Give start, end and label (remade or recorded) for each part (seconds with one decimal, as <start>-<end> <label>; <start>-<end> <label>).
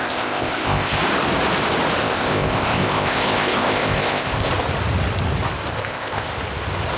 0.0-1.0 remade; 1.0-2.0 recorded; 2.0-4.5 remade; 4.5-5.7 recorded; 5.7-6.3 remade; 6.3-7.0 recorded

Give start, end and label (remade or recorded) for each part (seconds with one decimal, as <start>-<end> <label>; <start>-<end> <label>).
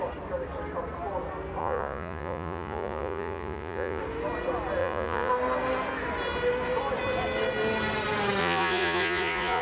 0.0-1.6 recorded; 1.6-4.0 remade; 4.0-4.8 recorded; 4.8-5.3 remade; 5.3-8.4 recorded; 8.4-9.6 remade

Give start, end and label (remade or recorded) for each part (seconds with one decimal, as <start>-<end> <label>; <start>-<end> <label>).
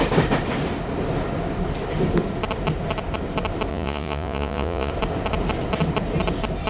0.0-3.7 recorded; 3.7-4.9 remade; 4.9-6.7 recorded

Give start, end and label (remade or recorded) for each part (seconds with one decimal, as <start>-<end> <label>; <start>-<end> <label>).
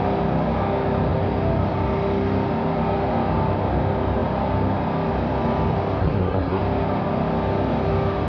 0.0-6.0 recorded; 6.0-6.6 remade; 6.6-8.3 recorded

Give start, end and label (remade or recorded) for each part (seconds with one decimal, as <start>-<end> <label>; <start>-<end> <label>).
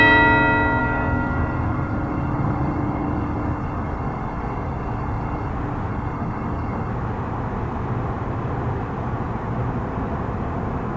0.0-0.8 recorded; 0.8-5.5 remade; 5.5-5.9 recorded; 5.9-6.9 remade; 6.9-11.0 recorded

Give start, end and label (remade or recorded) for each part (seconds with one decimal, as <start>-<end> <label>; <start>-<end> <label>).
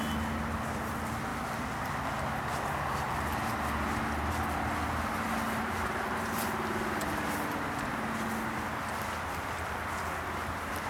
0.0-10.9 recorded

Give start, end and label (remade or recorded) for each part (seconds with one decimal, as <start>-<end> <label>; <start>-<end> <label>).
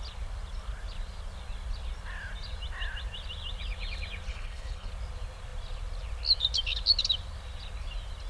0.0-4.3 recorded; 4.3-4.9 remade; 4.9-8.3 recorded